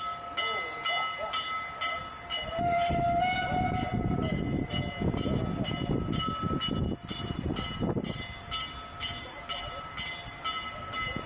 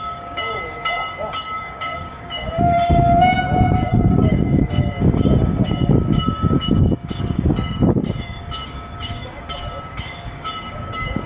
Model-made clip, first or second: second